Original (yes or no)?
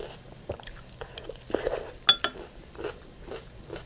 yes